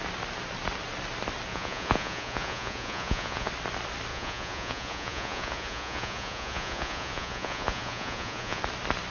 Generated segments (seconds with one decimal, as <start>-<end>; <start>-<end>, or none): 1.5-3.5; 4.1-8.6